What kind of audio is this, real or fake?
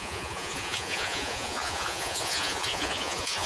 fake